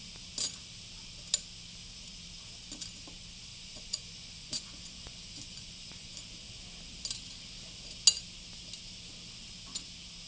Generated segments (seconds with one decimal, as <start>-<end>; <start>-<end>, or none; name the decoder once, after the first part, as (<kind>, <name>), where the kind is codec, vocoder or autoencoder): 3.5-6.2 (vocoder, Vocos)